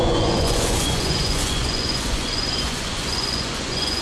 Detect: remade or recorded remade